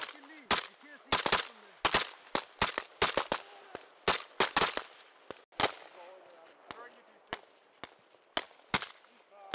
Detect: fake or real real